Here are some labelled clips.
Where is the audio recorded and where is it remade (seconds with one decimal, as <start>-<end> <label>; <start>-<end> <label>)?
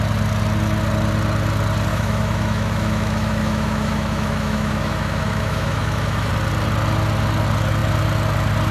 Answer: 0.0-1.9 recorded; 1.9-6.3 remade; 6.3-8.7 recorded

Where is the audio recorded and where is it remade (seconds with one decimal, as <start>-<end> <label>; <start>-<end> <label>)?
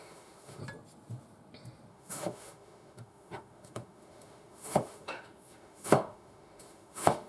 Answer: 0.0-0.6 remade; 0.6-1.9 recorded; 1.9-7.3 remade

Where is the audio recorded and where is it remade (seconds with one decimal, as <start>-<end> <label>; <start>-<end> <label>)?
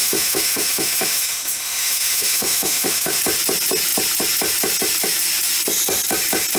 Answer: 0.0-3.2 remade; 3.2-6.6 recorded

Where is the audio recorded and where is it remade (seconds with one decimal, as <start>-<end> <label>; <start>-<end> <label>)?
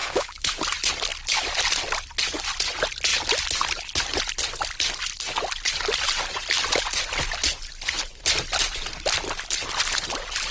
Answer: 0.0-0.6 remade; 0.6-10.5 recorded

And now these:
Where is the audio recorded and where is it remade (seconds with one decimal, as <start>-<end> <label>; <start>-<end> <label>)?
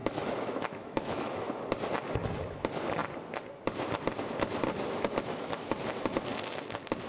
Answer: 0.0-1.6 remade; 1.6-7.1 recorded